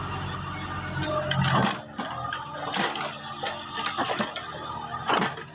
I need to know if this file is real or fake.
real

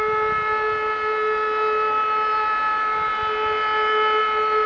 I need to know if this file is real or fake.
fake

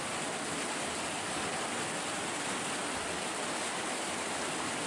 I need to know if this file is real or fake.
real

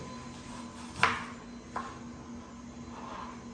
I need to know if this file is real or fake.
real